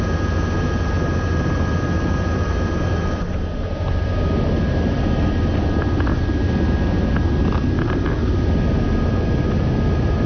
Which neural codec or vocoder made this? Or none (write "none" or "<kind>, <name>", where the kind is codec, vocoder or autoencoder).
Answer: none